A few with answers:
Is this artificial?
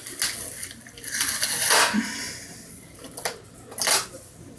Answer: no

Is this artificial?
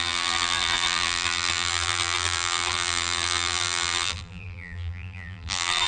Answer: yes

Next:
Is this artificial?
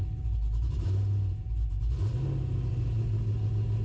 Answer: no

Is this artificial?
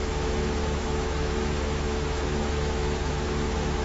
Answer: yes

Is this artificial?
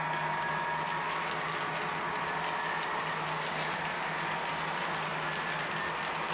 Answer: no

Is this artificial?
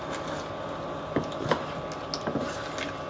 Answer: no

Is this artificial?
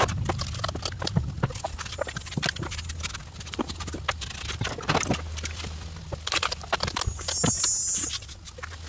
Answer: no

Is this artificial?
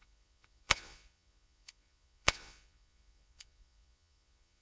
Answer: yes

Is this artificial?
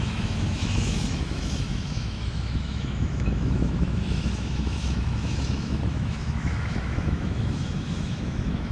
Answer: yes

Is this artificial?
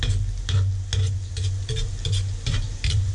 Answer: no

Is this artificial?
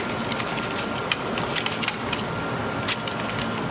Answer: no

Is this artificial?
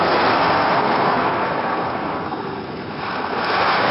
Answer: yes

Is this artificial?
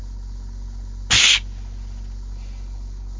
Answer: no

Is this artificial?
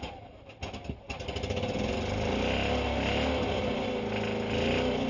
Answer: no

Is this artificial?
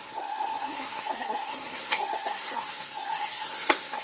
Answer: yes